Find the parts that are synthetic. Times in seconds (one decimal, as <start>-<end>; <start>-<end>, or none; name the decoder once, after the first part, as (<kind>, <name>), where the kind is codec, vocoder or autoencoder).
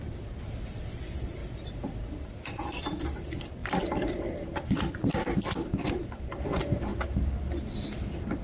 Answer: 0.0-6.9 (vocoder, BigVGAN v2); 7.5-8.4